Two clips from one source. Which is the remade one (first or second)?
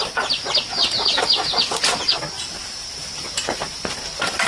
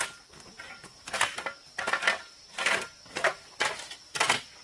first